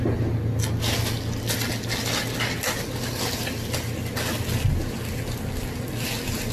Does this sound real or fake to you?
real